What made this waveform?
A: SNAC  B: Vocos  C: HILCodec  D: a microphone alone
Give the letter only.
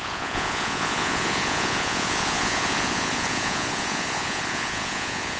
B